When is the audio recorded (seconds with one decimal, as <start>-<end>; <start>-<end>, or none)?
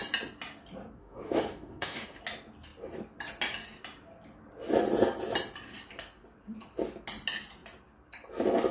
0.0-1.0; 2.2-8.7